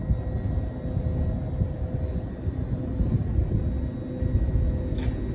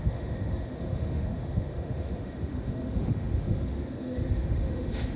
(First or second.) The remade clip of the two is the second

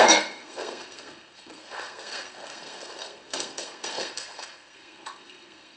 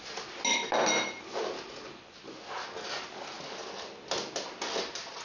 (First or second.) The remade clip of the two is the first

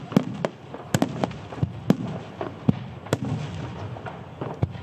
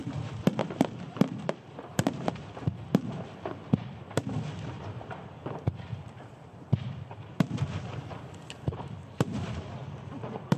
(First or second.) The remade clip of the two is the second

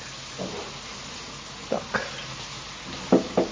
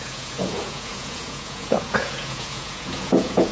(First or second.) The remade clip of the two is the second